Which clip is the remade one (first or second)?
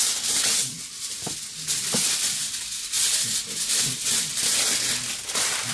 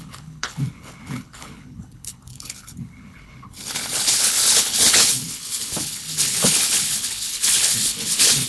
second